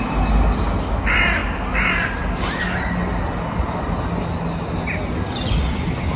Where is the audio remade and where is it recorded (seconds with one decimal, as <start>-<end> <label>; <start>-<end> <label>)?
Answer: 0.0-6.2 recorded